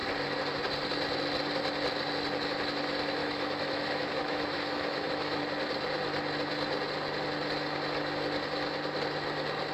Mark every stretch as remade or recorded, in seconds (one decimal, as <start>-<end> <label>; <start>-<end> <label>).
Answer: 0.0-3.2 recorded; 3.2-5.4 remade; 5.4-9.7 recorded